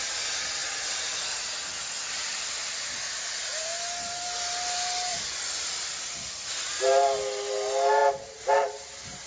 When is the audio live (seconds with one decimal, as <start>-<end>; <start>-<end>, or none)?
0.0-9.3